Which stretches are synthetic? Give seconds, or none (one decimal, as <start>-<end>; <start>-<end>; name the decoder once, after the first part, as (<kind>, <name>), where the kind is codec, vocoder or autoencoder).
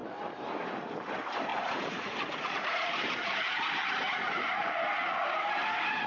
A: 1.5-4.8 (vocoder, Vocos)